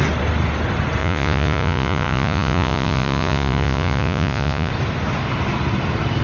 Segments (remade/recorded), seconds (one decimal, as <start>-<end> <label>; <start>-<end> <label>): 0.0-1.0 recorded; 1.0-4.7 remade; 4.7-6.2 recorded